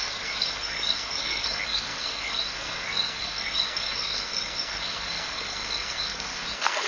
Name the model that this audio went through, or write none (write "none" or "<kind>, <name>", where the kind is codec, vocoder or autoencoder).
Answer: codec, SNAC